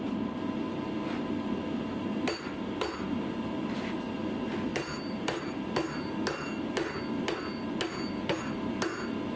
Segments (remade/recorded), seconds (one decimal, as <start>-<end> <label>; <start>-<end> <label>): 0.0-4.7 recorded; 4.7-5.4 remade; 5.4-9.4 recorded